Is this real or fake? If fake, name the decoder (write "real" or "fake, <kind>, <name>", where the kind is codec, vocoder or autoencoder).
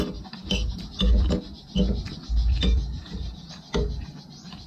real